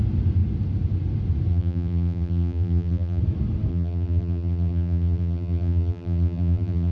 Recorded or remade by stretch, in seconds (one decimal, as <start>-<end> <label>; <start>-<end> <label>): 0.0-1.5 recorded; 1.5-3.2 remade; 3.2-3.7 recorded; 3.7-6.9 remade